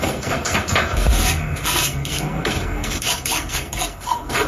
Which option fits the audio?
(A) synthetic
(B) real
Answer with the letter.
A